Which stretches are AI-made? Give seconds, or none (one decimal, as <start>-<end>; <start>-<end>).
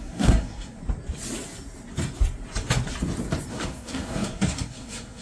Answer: 0.0-0.8; 3.5-5.2